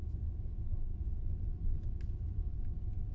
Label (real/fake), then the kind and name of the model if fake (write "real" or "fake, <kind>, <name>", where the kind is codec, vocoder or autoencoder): real